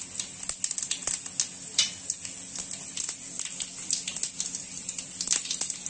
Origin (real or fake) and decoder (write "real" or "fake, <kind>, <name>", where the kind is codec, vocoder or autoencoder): real